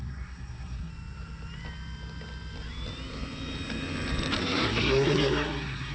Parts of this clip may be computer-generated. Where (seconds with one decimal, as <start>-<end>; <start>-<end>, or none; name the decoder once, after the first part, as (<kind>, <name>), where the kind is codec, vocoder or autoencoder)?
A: 0.0-0.9 (codec, SNAC); 4.4-5.9